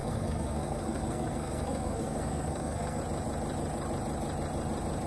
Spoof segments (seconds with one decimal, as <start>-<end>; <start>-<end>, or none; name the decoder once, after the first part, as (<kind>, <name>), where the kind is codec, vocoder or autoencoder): 0.0-3.0 (codec, SNAC)